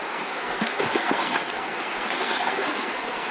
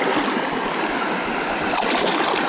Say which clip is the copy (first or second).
first